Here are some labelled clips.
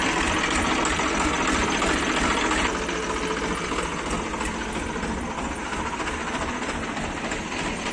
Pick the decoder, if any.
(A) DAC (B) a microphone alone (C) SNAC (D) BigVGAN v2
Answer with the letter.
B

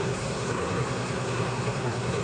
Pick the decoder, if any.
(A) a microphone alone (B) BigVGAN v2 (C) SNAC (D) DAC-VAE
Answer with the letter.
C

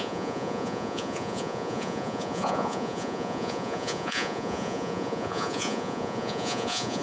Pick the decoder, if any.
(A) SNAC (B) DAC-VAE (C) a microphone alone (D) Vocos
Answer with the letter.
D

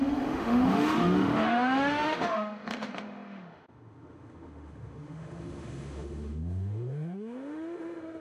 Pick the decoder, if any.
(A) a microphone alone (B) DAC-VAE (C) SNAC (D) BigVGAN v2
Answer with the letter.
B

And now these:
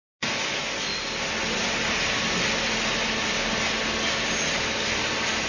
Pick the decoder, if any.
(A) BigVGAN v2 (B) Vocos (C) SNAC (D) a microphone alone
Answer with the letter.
D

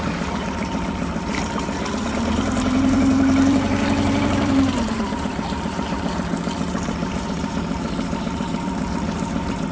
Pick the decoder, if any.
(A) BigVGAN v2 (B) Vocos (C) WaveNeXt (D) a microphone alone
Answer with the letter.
A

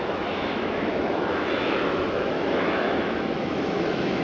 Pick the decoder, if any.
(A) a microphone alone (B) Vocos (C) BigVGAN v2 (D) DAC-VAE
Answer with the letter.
D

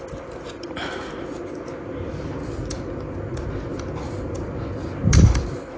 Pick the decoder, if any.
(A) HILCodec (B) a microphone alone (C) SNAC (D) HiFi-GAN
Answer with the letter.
B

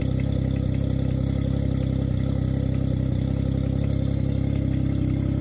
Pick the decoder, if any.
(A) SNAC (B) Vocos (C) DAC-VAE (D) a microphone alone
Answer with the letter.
D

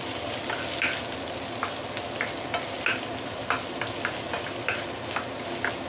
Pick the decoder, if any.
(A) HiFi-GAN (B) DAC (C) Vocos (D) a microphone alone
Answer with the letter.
D